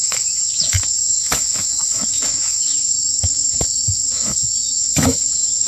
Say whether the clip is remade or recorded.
remade